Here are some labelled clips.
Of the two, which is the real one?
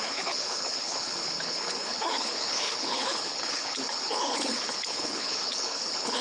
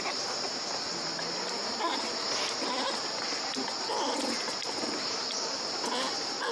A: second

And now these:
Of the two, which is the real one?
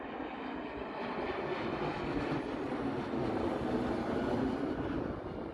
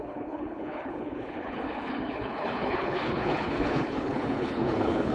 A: first